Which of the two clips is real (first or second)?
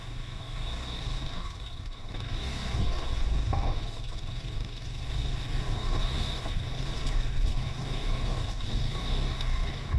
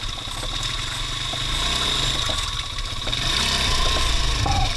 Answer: second